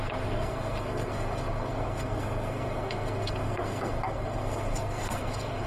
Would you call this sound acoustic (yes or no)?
no